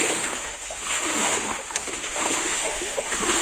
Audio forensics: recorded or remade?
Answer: remade